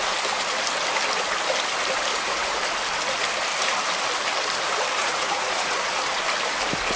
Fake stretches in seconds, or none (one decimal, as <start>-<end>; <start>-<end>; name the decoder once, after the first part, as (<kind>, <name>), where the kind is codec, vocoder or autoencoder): 2.1-2.6 (vocoder, Vocos); 5.0-6.0